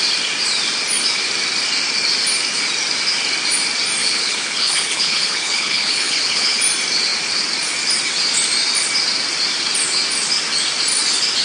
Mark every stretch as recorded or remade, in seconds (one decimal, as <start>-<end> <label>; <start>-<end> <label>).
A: 0.0-4.0 recorded; 4.0-6.6 remade; 6.6-11.4 recorded